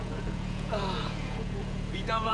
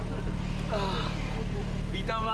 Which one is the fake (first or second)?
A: first